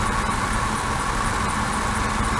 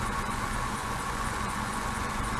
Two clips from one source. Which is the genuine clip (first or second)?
first